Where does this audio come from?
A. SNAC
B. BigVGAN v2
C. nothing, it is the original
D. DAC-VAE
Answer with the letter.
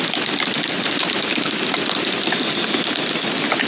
C